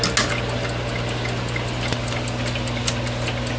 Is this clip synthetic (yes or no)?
no